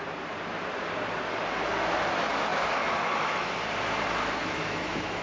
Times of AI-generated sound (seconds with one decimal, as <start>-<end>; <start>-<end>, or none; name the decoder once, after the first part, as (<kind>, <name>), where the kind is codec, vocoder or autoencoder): 2.5-3.5 (autoencoder, DAC-VAE); 4.4-5.2